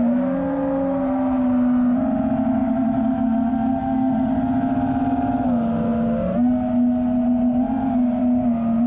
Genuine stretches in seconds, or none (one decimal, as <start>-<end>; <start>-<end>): 0.0-8.9